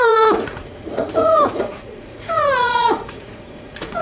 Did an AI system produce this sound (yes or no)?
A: yes